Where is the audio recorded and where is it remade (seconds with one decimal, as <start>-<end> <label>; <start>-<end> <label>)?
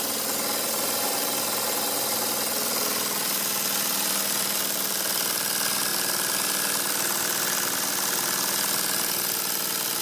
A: 0.0-10.0 recorded